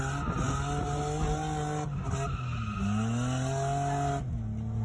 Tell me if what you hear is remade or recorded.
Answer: recorded